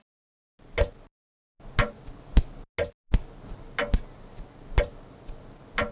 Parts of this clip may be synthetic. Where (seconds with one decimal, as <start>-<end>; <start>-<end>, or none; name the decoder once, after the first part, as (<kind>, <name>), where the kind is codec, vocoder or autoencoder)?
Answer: none